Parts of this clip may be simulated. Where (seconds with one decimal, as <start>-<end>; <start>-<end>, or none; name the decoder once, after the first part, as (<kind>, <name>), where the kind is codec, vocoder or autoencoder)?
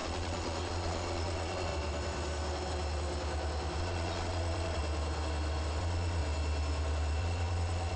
0.0-1.7 (vocoder, Vocos); 3.8-4.8; 5.8-6.2; 7.2-8.0